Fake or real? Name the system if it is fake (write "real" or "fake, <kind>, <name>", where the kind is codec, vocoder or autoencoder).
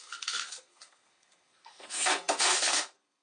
fake, codec, SNAC